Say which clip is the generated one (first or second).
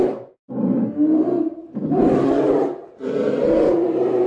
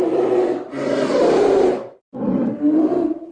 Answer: second